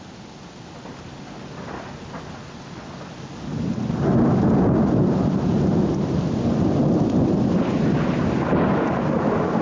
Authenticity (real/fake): real